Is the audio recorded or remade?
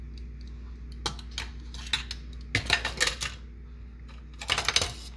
recorded